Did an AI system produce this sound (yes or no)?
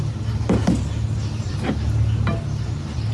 no